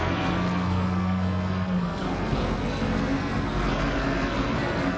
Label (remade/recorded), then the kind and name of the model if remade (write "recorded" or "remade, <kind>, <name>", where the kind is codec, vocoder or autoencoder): remade, codec, SNAC